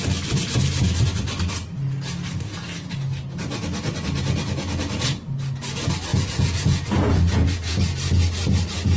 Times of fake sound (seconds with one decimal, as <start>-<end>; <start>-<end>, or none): 6.1-7.8